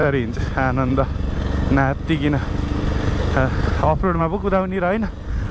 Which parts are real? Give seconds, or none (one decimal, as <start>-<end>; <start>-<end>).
0.0-5.5